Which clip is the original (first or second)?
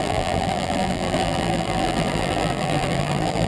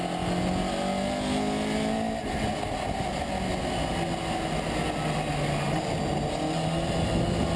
second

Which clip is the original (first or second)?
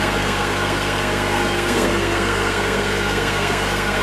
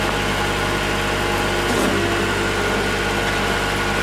second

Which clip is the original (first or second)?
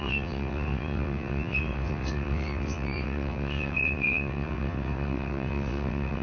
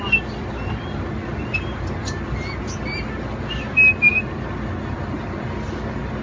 second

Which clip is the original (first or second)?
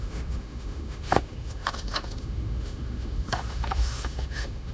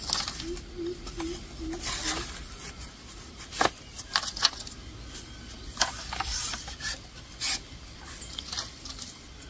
second